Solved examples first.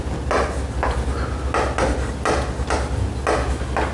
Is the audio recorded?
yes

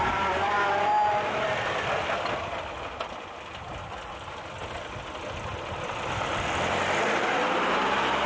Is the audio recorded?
yes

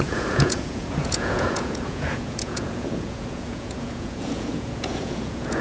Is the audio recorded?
no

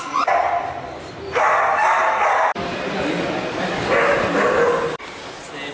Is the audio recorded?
yes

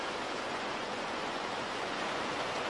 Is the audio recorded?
no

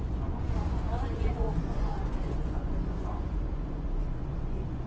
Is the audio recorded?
no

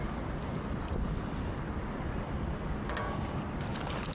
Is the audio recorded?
yes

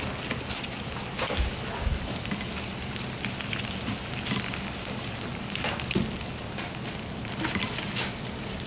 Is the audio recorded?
yes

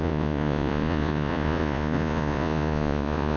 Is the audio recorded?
no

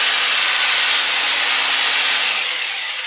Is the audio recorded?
yes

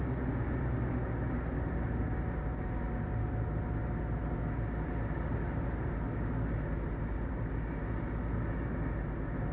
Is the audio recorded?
yes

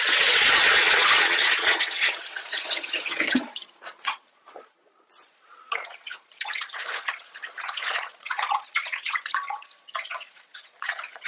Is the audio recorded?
no